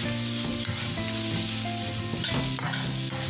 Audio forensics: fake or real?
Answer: real